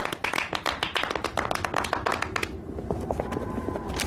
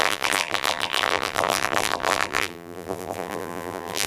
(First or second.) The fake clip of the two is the second